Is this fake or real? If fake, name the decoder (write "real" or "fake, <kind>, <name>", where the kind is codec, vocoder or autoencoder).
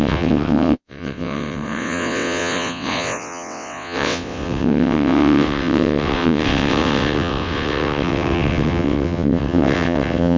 fake, vocoder, WaveNeXt